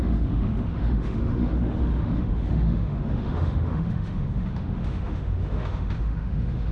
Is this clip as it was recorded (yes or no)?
no